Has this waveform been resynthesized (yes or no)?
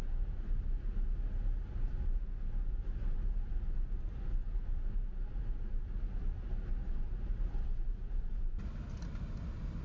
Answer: no